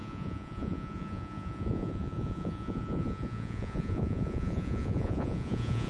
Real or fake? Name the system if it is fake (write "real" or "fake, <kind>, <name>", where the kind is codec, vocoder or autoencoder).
fake, vocoder, Vocos